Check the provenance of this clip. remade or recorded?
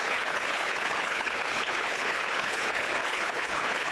remade